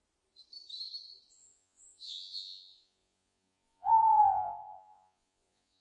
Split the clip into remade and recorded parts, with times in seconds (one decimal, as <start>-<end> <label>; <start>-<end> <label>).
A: 0.0-1.3 recorded; 1.3-5.8 remade